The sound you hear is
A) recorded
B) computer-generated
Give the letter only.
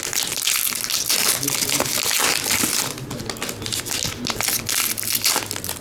A